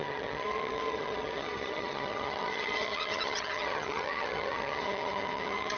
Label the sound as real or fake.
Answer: fake